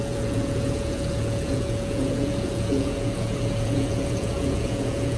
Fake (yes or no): yes